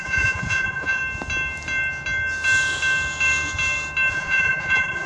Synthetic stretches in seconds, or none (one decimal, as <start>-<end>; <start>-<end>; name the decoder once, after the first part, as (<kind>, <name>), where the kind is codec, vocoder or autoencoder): 0.0-1.0 (vocoder, Vocos); 4.1-5.1